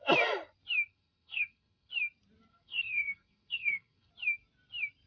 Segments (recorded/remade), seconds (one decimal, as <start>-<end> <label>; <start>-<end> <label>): 0.0-0.9 recorded; 0.9-1.9 remade; 1.9-2.5 recorded; 2.5-4.1 remade; 4.1-5.1 recorded